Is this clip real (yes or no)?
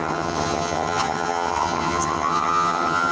no